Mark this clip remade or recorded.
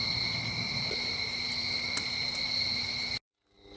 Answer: recorded